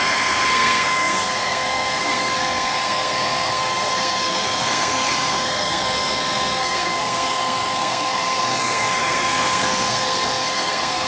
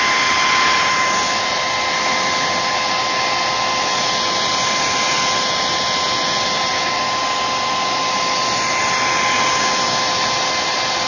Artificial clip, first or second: first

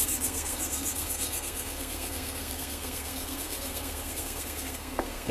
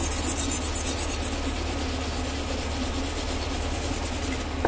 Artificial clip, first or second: first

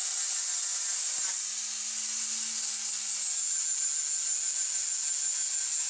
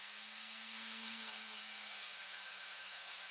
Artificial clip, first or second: second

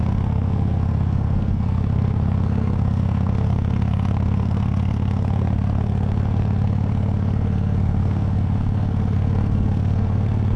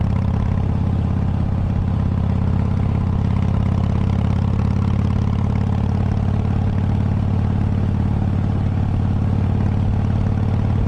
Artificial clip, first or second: first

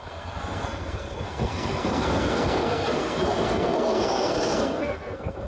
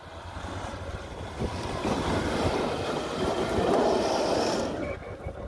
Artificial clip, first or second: first